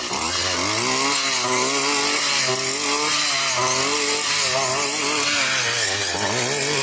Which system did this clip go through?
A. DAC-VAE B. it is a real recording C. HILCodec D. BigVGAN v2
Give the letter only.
B